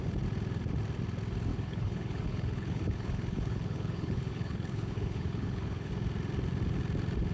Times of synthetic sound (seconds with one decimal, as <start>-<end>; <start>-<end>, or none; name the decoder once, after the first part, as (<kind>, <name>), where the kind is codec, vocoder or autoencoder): 1.5-5.9 (codec, HILCodec)